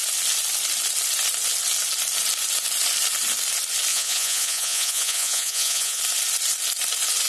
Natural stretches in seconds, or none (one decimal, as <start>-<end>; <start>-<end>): 0.0-3.9; 6.0-7.3